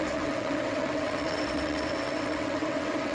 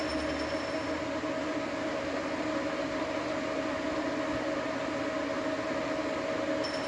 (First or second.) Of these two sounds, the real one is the second